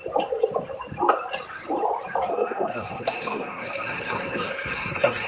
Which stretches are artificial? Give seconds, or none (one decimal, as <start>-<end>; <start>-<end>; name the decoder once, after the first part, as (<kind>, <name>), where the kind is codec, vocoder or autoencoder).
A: 2.3-5.3 (codec, SNAC)